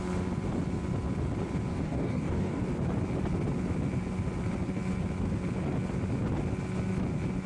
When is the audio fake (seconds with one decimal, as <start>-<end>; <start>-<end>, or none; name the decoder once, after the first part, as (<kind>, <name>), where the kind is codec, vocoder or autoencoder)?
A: 1.7-2.6 (codec, DAC)